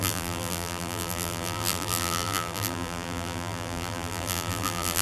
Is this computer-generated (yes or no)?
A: yes